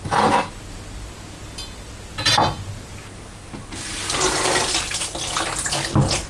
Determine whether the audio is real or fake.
real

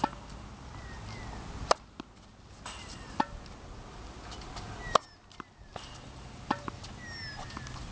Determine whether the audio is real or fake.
real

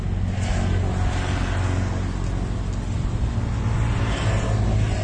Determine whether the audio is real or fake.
real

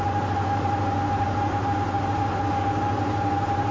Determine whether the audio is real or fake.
real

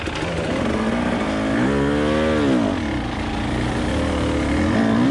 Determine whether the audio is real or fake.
real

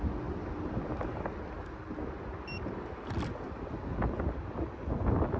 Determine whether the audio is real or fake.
real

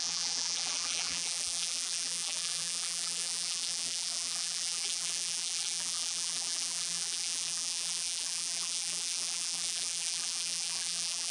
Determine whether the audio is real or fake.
fake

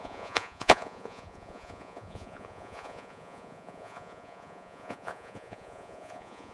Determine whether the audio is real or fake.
fake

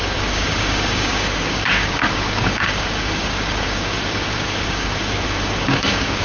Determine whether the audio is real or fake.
fake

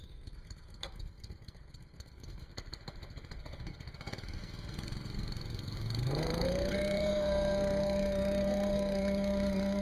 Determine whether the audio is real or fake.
fake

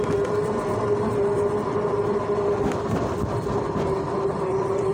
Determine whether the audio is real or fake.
real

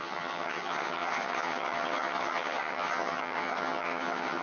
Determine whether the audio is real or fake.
fake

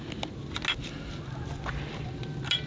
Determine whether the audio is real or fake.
real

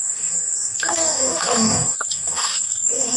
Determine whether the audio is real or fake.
fake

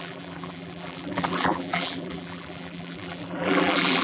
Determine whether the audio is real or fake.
fake